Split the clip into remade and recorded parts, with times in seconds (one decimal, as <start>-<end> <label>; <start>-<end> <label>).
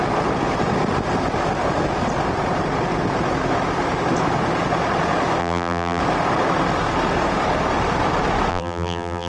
0.0-5.4 recorded; 5.4-6.0 remade; 6.0-8.5 recorded; 8.5-9.3 remade